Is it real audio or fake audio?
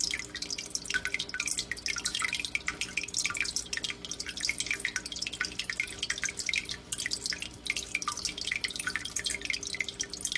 real